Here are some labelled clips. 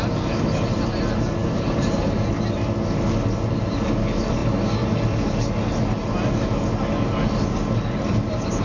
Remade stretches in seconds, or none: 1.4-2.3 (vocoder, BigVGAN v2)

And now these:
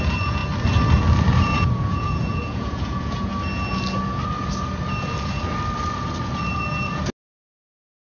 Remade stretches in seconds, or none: 0.0-0.4 (vocoder, Vocos); 1.7-3.3

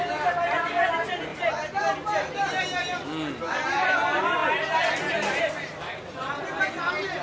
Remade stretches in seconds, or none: none

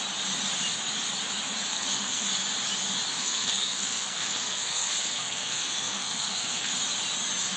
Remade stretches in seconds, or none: 1.7-2.3 (codec, SNAC); 3.2-6.7

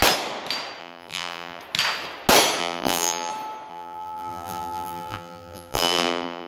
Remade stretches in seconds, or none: 0.8-1.6 (vocoder, BigVGAN v2); 2.6-3.3; 3.7-6.5

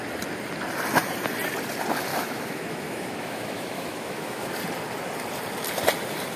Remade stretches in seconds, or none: 2.1-4.5 (autoencoder, DAC-VAE)